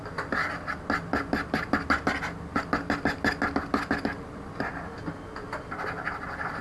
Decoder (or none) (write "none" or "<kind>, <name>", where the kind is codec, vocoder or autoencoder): none